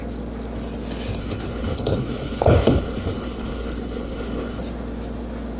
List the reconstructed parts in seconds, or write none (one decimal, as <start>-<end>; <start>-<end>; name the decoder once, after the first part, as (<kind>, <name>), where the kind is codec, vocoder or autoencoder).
1.2-4.6 (codec, HILCodec)